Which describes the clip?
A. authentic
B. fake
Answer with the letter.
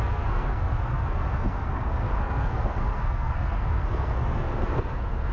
B